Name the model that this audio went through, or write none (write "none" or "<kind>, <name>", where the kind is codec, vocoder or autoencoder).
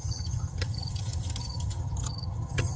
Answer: vocoder, HiFi-GAN